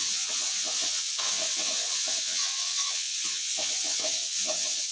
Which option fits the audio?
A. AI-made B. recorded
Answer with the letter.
A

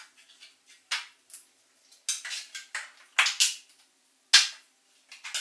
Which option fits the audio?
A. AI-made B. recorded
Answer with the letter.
B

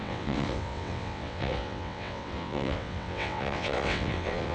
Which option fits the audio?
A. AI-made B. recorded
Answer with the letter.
A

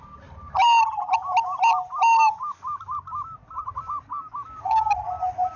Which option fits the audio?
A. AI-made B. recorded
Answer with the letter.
B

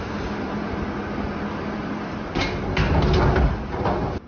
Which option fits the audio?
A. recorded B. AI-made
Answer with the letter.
A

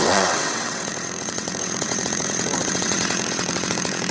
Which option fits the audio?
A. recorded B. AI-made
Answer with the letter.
B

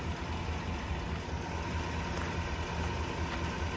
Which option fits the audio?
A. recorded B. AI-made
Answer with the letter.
A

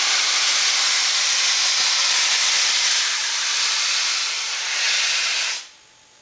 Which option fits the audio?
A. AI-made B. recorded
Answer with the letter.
B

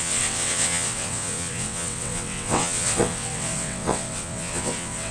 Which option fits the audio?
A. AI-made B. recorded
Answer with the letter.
A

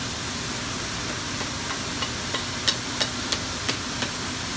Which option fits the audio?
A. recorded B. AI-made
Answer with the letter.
A